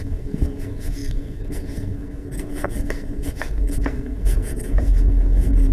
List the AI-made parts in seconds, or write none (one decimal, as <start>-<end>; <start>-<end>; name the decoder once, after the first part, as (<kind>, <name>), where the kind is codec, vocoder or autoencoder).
0.0-5.7 (codec, SNAC)